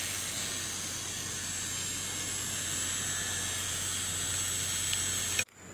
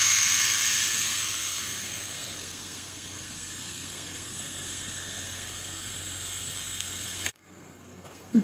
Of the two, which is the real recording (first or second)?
first